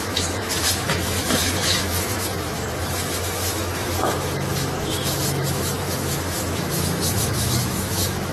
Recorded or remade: remade